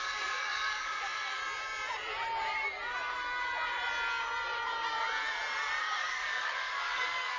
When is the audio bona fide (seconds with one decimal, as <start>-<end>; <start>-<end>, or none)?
1.4-5.8